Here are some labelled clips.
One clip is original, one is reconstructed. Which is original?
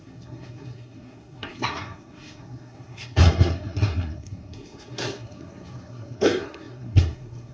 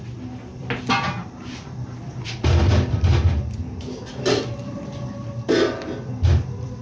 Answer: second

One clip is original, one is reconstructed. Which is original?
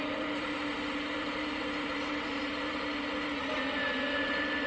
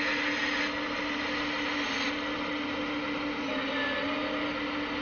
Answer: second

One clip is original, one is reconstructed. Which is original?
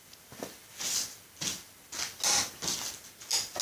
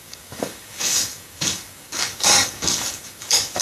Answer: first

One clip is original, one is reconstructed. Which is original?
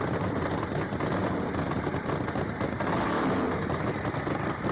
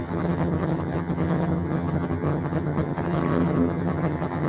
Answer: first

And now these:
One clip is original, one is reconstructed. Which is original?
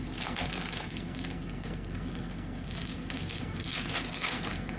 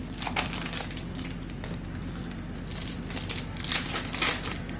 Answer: second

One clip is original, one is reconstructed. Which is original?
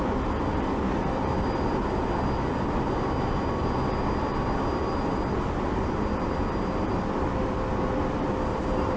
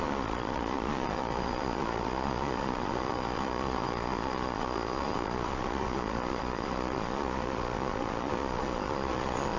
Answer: first